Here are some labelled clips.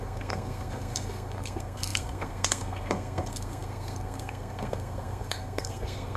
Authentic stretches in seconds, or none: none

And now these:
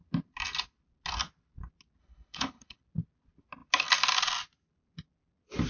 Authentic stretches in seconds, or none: 0.0-2.0; 2.8-5.7